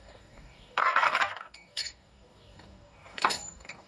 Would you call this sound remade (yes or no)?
yes